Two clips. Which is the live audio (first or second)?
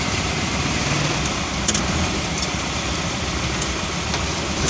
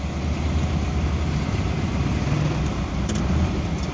second